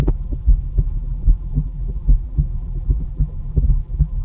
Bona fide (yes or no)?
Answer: no